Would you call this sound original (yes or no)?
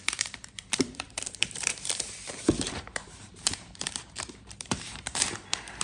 no